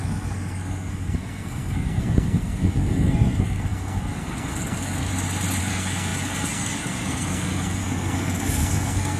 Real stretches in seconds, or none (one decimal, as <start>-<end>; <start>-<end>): 5.1-5.6